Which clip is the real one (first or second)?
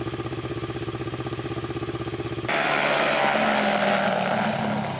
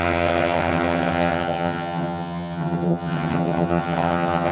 first